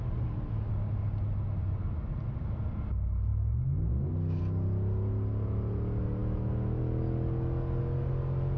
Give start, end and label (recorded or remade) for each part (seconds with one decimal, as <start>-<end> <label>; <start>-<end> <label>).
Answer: 0.0-8.6 recorded